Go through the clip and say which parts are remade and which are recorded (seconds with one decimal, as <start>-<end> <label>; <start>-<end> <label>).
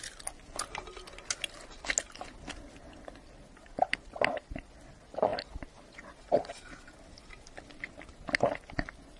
0.0-9.2 recorded